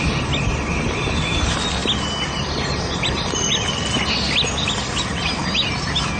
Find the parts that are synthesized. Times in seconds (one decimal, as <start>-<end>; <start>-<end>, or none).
none